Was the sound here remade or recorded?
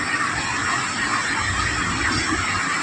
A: recorded